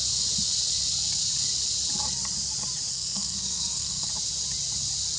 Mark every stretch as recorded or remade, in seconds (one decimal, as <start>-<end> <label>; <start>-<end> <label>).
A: 0.0-2.9 recorded; 2.9-4.1 remade; 4.1-5.2 recorded